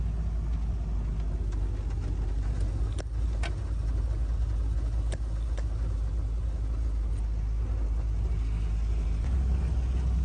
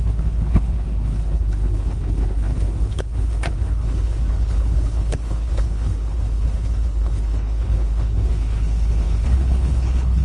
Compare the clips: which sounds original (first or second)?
first